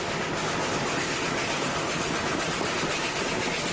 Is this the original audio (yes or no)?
yes